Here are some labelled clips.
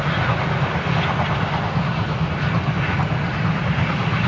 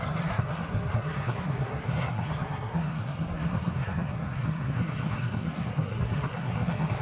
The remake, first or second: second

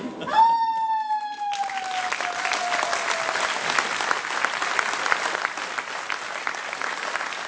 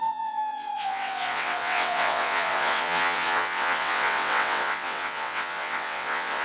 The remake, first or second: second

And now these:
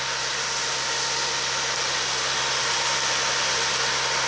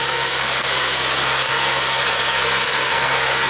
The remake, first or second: second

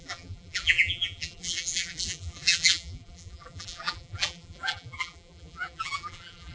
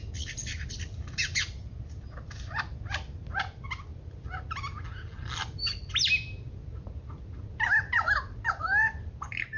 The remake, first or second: first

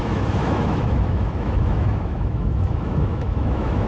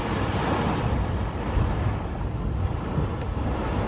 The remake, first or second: first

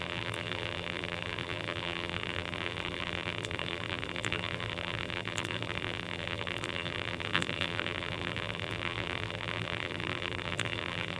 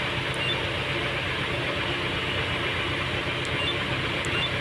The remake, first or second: first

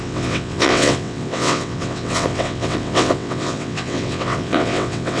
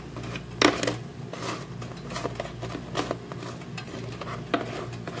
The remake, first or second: first